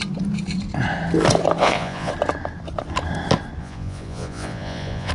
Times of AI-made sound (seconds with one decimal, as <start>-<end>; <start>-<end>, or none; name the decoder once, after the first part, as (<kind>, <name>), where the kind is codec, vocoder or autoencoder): 1.6-2.1 (vocoder, Vocos); 3.6-5.1